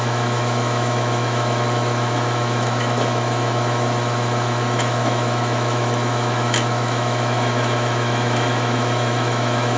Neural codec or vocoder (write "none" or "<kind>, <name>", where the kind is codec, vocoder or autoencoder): autoencoder, DAC-VAE